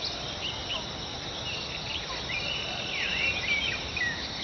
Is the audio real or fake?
real